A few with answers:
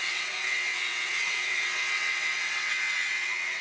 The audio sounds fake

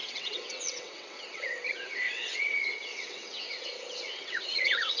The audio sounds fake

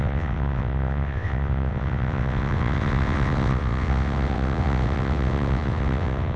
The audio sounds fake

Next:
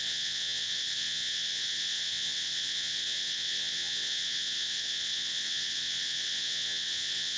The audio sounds fake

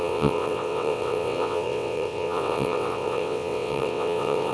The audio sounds fake